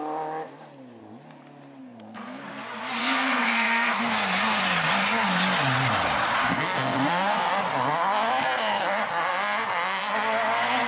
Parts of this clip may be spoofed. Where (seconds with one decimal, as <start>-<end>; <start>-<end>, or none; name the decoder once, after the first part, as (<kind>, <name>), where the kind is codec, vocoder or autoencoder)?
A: 1.8-2.4 (codec, SNAC); 3.0-4.0; 6.4-7.5